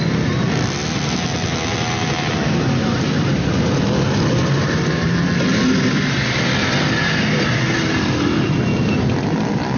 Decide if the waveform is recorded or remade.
recorded